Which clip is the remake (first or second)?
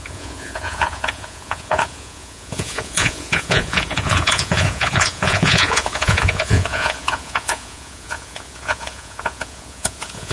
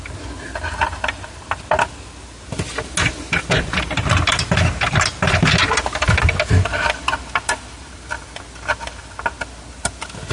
first